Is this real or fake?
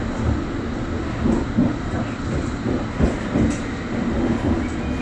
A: real